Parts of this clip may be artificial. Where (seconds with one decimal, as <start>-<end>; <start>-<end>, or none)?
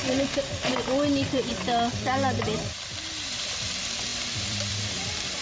0.0-0.7; 1.5-3.4; 4.1-5.4